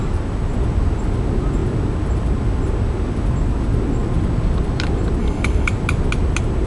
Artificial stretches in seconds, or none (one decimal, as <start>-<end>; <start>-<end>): 5.2-5.7